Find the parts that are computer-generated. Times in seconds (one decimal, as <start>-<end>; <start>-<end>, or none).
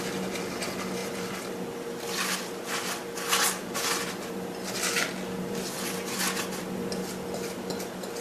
none